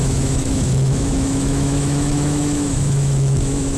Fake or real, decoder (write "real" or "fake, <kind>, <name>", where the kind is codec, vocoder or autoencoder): fake, autoencoder, DAC-VAE